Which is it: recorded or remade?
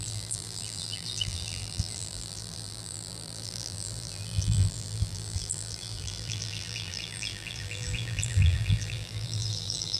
remade